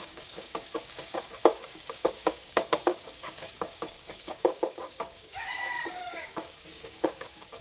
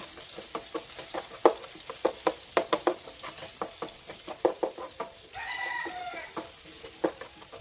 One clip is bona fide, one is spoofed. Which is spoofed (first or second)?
first